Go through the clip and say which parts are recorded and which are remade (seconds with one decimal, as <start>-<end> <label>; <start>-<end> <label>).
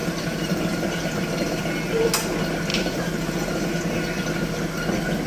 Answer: 0.0-1.6 remade; 1.6-2.7 recorded; 2.7-3.7 remade; 3.7-5.3 recorded